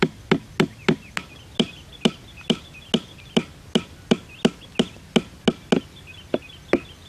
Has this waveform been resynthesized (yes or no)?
no